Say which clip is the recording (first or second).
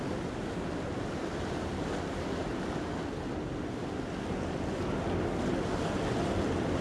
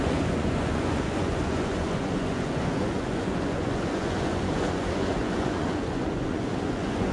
first